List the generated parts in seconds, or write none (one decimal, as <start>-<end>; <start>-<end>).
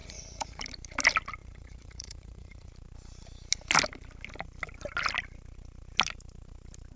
0.0-0.6; 1.4-2.7